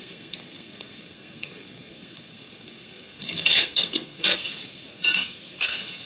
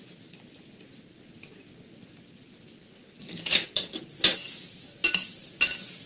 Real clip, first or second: second